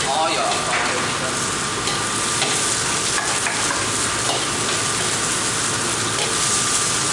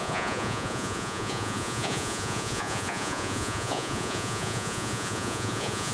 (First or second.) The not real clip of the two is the second